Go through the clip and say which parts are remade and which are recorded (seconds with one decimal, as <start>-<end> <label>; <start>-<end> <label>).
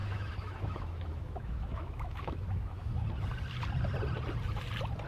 0.0-2.9 remade; 2.9-5.1 recorded